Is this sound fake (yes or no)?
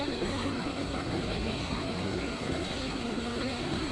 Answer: yes